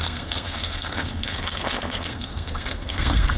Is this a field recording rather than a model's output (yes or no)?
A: no